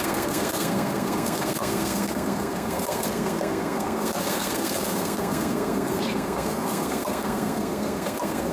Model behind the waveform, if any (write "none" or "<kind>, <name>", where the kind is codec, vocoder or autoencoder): codec, SNAC